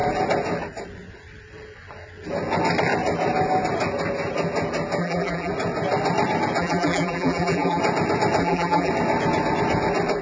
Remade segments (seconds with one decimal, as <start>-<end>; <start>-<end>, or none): 5.0-5.5; 6.6-7.8; 8.4-8.9